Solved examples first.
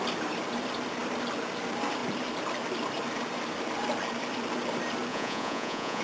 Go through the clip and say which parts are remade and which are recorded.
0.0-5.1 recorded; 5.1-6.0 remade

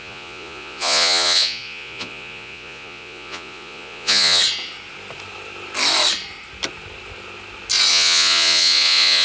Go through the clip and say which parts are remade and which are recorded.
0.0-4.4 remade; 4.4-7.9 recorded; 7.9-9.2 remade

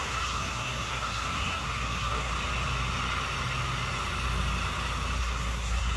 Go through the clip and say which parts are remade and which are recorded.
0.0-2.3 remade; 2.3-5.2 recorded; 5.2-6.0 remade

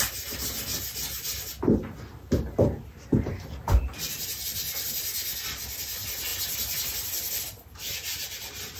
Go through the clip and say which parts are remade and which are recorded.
0.0-8.8 recorded

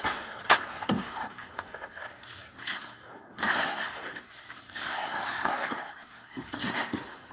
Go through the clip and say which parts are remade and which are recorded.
0.0-7.3 remade